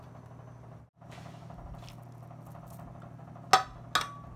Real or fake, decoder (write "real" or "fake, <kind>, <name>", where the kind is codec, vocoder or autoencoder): real